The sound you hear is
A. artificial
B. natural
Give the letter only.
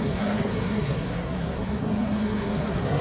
A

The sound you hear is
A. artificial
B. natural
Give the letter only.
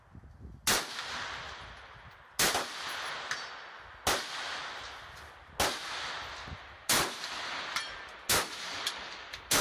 B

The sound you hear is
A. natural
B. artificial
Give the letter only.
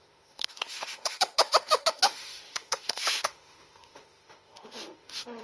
B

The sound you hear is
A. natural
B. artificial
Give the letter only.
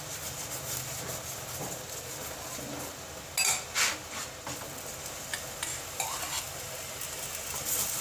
A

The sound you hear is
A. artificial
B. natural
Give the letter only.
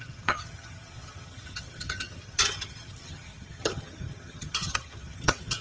A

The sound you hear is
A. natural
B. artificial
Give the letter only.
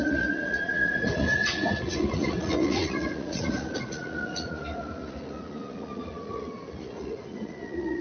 B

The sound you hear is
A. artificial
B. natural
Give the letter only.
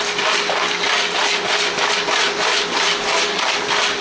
B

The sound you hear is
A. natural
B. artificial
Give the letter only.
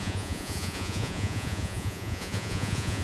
B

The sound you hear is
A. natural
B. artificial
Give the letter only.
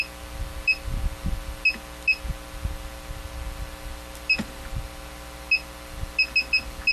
A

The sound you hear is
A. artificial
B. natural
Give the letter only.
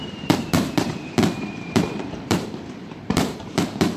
A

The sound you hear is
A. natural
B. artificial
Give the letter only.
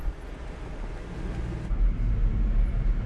A